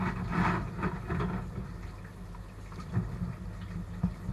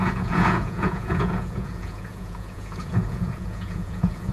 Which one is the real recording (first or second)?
first